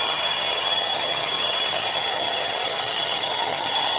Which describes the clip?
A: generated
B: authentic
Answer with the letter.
A